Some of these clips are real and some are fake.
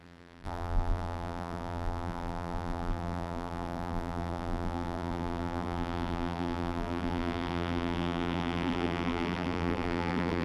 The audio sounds fake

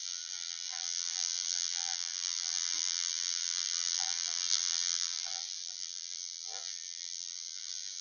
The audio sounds fake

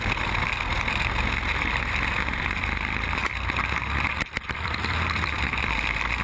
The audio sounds fake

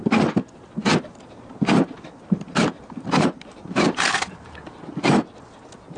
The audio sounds real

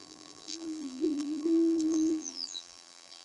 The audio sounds fake